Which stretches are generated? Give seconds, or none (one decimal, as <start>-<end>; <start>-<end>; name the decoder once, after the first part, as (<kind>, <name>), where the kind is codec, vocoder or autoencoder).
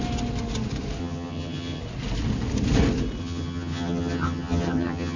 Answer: 1.0-1.8 (vocoder, HiFi-GAN); 3.2-5.2